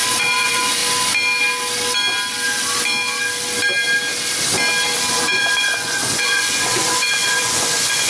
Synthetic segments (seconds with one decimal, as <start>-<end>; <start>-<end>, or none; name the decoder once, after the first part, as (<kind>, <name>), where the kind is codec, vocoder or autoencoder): 0.0-0.8 (vocoder, Vocos); 5.1-8.1